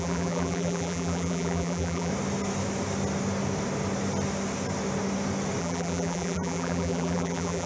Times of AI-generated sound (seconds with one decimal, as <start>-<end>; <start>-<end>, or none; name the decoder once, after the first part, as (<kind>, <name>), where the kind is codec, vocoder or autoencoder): 0.0-2.1 (vocoder, BigVGAN v2); 5.6-7.7